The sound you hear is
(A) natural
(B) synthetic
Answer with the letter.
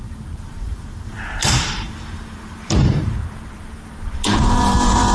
B